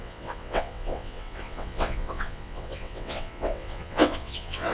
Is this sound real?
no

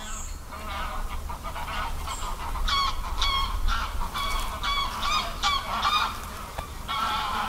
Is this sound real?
yes